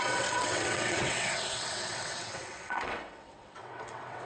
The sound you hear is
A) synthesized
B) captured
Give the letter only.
A